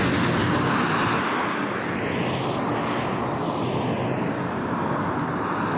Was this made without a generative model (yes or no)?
yes